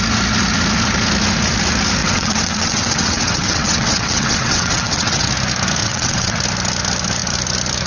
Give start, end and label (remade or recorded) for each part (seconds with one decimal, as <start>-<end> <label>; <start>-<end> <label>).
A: 0.0-2.0 recorded; 2.0-5.3 remade; 5.3-5.8 recorded; 5.8-6.4 remade; 6.4-7.9 recorded